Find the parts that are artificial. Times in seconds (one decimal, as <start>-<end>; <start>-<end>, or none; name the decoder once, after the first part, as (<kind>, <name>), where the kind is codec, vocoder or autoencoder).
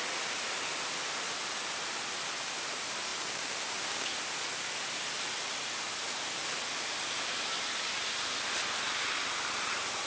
none